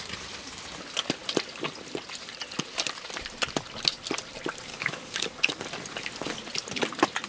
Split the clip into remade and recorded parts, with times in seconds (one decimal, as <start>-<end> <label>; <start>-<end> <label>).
0.0-4.7 recorded; 4.7-5.6 remade; 5.6-7.3 recorded